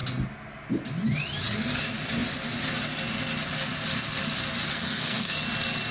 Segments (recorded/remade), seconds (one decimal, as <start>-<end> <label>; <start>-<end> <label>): 0.0-4.7 recorded; 4.7-5.4 remade; 5.4-5.9 recorded